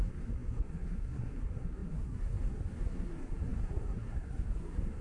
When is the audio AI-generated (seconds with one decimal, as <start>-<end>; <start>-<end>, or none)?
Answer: 0.0-5.0